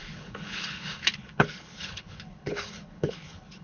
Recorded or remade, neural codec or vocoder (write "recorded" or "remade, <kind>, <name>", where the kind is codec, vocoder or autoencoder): remade, codec, HILCodec